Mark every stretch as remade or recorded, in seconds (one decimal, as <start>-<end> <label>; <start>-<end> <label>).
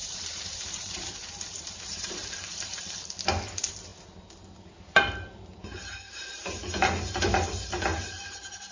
0.0-2.8 remade; 2.8-7.9 recorded; 7.9-8.7 remade